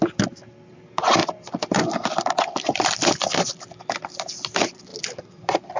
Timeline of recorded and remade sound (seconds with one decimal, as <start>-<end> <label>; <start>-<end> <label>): 0.0-1.2 recorded; 1.2-3.8 remade; 3.8-5.8 recorded